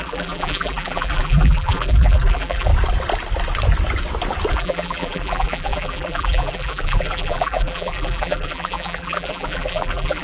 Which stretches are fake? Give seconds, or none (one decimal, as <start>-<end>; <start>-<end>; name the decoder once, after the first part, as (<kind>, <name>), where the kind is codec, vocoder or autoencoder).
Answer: 0.0-2.7 (vocoder, BigVGAN v2); 4.5-10.2